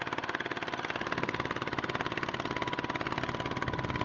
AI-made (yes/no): no